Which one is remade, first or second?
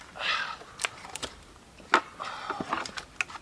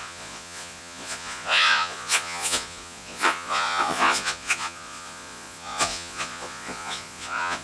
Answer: second